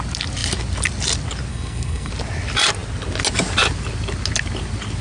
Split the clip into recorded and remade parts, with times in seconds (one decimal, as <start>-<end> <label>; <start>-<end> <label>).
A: 0.0-1.5 recorded; 1.5-2.1 remade; 2.1-5.0 recorded